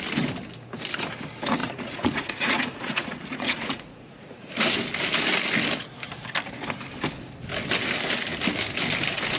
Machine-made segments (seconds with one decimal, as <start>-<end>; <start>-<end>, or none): 1.6-4.5